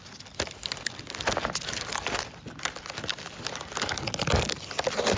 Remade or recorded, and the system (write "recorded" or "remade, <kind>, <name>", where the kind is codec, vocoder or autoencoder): recorded